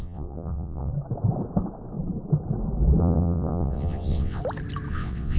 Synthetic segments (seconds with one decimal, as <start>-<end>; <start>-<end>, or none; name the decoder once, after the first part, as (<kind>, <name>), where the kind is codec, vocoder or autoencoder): 0.0-0.9 (vocoder, WaveNeXt); 3.0-4.4; 4.9-5.4